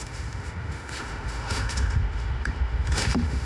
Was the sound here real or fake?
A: fake